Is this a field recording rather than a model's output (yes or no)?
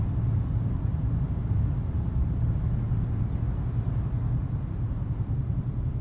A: yes